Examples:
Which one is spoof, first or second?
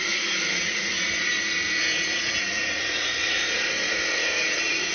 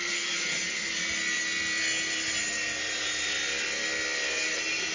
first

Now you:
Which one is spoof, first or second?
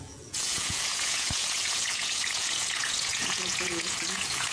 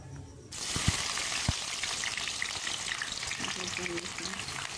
first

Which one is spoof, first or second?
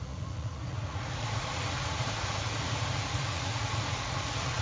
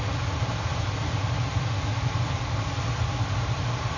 first